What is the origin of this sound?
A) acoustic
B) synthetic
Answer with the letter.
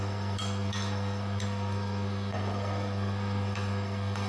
B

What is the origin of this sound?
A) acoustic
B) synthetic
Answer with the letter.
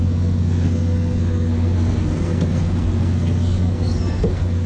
B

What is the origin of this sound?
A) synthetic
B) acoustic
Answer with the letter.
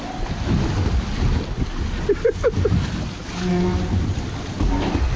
B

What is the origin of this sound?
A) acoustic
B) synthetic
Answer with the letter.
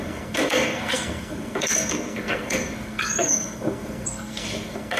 B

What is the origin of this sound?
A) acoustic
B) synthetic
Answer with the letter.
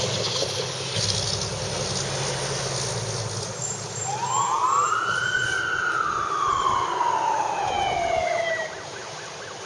A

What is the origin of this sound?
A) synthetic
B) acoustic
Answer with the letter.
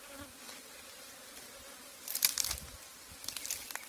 B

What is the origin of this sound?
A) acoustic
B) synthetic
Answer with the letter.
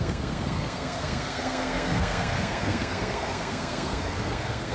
B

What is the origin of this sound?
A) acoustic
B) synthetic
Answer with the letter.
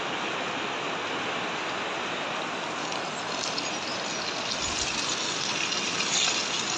A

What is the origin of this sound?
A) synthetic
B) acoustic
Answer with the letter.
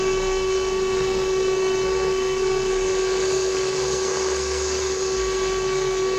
A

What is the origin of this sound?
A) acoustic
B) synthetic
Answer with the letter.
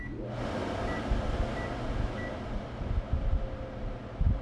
A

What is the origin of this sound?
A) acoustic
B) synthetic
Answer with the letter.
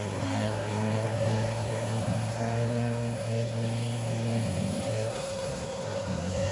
B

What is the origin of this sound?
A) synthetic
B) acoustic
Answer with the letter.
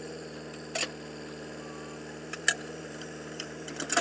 B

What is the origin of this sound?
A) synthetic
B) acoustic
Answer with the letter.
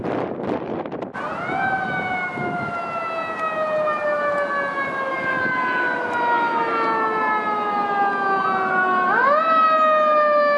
B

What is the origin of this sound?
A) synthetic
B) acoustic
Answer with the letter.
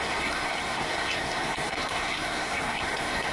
A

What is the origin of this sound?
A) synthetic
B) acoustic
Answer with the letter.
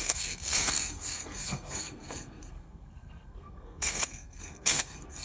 A